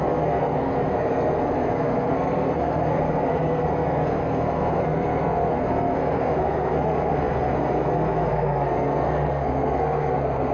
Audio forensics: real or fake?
fake